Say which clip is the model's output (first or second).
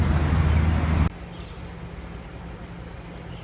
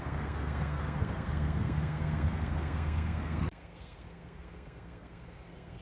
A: second